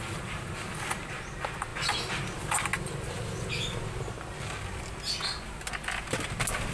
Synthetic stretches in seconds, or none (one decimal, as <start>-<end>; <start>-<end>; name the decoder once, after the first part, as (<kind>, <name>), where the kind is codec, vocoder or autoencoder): none